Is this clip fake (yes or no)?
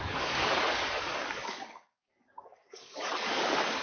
yes